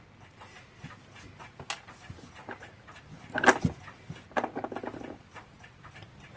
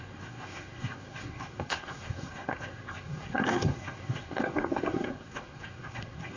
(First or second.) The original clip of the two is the first